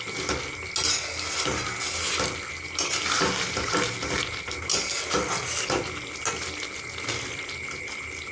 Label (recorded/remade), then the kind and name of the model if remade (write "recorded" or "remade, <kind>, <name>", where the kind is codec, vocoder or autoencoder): recorded